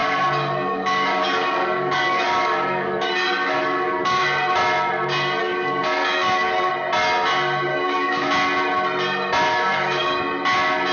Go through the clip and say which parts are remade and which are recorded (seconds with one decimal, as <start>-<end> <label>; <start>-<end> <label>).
0.0-4.2 remade; 4.2-5.4 recorded; 5.4-6.7 remade; 6.7-7.7 recorded; 7.7-8.3 remade; 8.3-9.5 recorded; 9.5-10.2 remade; 10.2-10.9 recorded